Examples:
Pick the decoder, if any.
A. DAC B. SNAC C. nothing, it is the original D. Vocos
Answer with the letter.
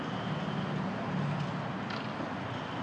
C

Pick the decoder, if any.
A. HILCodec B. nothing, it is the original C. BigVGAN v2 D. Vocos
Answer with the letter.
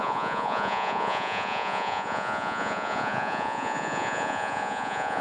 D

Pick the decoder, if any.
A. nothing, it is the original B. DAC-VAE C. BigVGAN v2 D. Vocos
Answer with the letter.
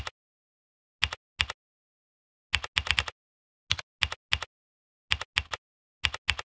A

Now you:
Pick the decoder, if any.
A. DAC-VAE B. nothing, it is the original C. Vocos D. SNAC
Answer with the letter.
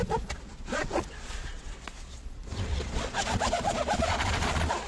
C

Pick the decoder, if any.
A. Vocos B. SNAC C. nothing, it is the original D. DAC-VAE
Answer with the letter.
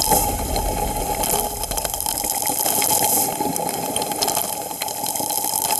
C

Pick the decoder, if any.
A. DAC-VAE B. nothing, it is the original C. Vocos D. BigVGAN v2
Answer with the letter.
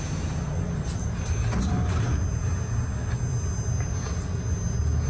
B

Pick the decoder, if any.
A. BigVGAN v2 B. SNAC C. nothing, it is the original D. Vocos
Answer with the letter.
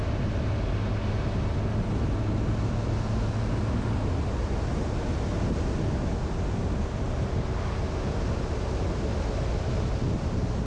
C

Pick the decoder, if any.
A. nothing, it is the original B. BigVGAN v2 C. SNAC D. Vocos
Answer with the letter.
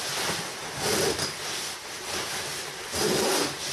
A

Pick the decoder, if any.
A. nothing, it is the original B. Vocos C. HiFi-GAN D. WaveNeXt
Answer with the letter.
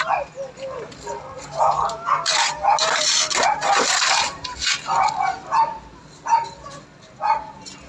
A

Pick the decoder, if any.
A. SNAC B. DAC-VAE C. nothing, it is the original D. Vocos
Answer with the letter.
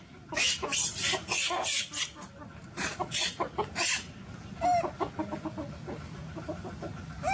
C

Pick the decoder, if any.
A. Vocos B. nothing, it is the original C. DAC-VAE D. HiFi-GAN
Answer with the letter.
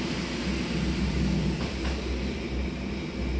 B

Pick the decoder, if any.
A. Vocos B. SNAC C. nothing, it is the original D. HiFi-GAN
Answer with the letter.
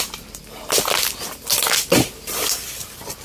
C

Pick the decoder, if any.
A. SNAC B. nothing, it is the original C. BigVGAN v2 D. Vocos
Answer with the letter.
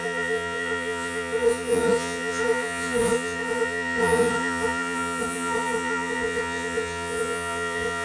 D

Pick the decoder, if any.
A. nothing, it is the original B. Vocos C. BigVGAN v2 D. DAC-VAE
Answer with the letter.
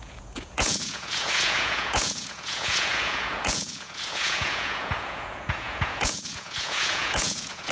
B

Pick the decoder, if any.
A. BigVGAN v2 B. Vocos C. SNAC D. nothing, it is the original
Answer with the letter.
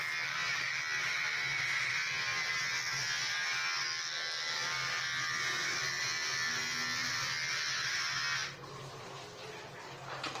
D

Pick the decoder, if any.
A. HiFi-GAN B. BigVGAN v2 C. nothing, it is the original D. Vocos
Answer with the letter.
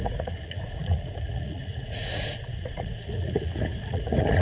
D